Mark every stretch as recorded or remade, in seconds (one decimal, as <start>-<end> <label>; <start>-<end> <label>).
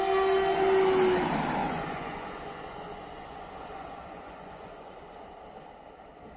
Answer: 0.0-1.6 recorded; 1.6-5.4 remade; 5.4-6.4 recorded